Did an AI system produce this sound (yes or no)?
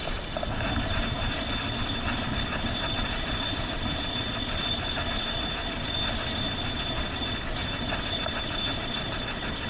no